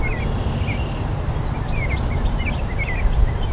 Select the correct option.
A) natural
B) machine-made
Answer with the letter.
A